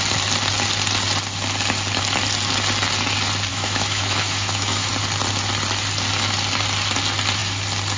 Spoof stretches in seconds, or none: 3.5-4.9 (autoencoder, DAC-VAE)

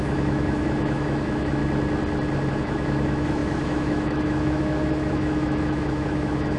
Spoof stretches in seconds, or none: 0.0-1.6 (autoencoder, DAC-VAE); 2.5-6.6

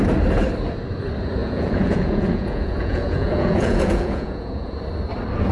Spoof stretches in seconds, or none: 1.4-4.7 (vocoder, Vocos)

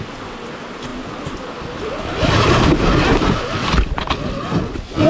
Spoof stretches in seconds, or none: none

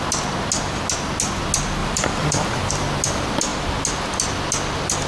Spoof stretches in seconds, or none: 1.8-2.7 (vocoder, BigVGAN v2)

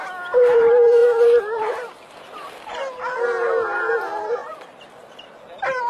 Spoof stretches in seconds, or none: 4.4-4.9 (vocoder, BigVGAN v2)